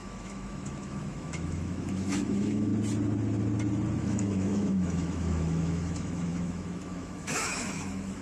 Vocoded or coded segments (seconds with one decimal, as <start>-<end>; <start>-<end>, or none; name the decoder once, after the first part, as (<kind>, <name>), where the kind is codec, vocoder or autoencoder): 0.0-2.7 (autoencoder, DAC-VAE); 4.0-8.2

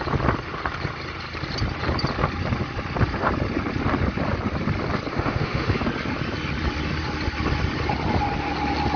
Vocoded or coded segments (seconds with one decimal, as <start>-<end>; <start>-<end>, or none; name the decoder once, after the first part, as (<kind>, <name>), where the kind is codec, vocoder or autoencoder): 5.1-5.8 (autoencoder, DAC-VAE)

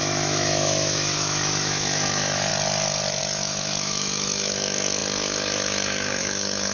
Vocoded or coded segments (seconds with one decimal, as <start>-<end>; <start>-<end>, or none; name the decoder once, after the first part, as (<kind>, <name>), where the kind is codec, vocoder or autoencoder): 0.0-2.5 (autoencoder, DAC-VAE); 3.2-6.7

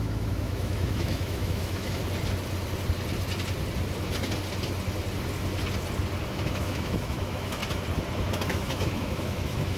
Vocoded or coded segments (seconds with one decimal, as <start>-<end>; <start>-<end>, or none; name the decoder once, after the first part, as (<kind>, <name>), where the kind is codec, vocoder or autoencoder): 0.0-2.0 (autoencoder, DAC-VAE); 6.3-7.6; 8.3-9.8

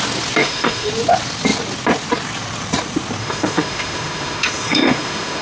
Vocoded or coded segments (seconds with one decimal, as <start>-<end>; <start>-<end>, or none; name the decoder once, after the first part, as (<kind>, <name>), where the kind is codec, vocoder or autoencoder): 0.4-0.9 (autoencoder, DAC-VAE); 3.2-5.4

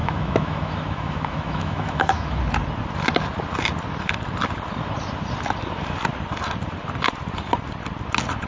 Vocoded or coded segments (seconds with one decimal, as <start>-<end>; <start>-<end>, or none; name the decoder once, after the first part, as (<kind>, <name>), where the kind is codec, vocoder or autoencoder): 0.0-2.4 (autoencoder, DAC-VAE)

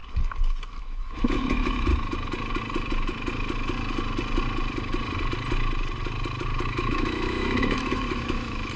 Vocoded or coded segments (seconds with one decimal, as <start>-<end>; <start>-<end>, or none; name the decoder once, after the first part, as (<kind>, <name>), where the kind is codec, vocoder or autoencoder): 0.8-1.9 (autoencoder, DAC-VAE); 6.7-8.8